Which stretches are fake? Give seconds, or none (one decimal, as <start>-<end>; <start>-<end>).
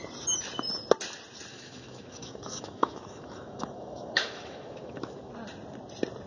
1.5-5.3